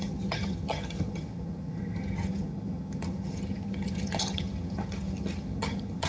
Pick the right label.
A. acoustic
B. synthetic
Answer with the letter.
B